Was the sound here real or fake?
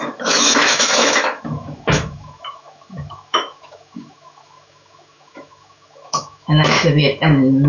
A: fake